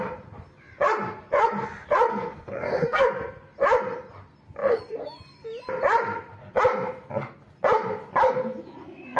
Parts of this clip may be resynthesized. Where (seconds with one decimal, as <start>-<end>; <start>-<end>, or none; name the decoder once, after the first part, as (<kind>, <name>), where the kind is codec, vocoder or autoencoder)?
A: 2.1-3.0 (codec, SNAC)